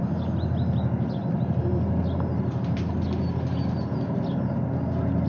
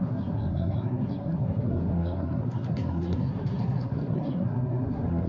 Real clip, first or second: first